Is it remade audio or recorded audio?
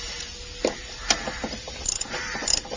recorded